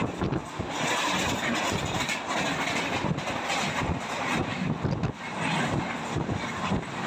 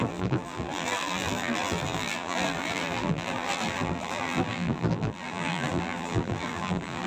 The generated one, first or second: second